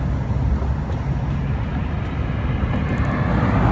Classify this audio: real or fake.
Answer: real